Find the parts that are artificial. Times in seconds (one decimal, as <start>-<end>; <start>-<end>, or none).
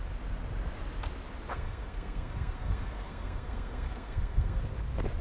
1.5-4.6